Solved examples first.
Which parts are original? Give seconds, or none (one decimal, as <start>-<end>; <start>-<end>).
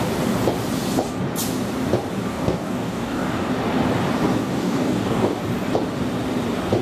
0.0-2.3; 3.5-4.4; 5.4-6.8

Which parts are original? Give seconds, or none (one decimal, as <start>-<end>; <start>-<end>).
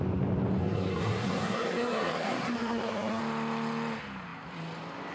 0.0-0.6; 3.2-5.1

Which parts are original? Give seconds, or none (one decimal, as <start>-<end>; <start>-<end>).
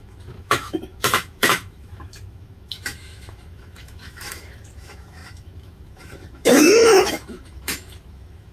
none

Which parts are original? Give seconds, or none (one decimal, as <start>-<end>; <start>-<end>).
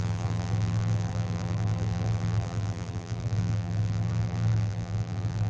none